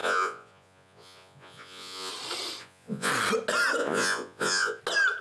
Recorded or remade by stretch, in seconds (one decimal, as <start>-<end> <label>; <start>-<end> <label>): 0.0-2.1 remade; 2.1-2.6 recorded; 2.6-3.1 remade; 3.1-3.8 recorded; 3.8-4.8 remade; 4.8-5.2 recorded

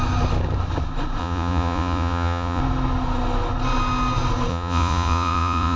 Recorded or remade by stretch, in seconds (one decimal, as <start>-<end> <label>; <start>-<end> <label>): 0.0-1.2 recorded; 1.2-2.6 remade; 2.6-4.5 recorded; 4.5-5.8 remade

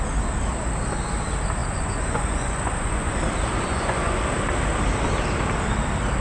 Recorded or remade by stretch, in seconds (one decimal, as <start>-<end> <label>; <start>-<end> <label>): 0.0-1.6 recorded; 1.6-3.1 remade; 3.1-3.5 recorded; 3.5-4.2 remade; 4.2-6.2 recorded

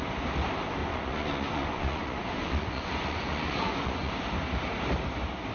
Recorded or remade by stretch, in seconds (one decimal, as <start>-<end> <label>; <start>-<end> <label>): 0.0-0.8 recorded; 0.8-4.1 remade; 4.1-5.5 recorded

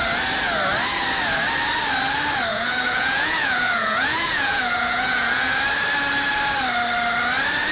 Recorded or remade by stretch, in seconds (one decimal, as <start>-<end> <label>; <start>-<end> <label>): 0.0-2.5 recorded; 2.5-5.6 remade; 5.6-7.7 recorded

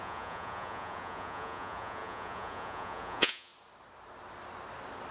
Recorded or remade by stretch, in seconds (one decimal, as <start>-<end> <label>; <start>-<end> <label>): 0.0-3.5 remade; 3.5-5.1 recorded

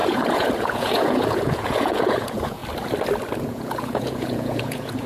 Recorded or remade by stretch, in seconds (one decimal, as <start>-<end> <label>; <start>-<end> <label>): 0.0-2.6 remade; 2.6-3.5 recorded; 3.5-5.1 remade

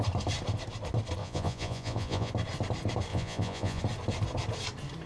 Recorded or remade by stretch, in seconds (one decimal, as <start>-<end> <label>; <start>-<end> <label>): 0.0-1.2 recorded; 1.2-2.3 remade; 2.3-3.1 recorded; 3.1-3.8 remade; 3.8-5.1 recorded